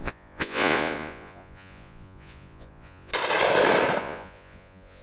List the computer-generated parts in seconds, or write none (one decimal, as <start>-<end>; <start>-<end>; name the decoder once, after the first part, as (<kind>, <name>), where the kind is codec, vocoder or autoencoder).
0.0-3.1 (vocoder, Vocos); 4.0-5.0

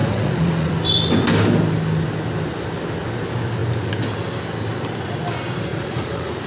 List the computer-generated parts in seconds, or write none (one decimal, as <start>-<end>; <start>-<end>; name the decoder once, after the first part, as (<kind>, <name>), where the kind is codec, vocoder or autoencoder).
0.0-0.7 (vocoder, Vocos); 5.7-6.5

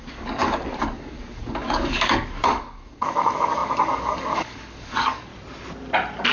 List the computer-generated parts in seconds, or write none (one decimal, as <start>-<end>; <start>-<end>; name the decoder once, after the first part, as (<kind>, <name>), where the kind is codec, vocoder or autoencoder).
0.0-5.3 (codec, DAC)